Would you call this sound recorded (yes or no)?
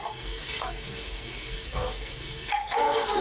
no